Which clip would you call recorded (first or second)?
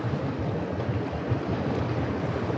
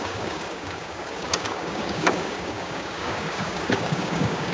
first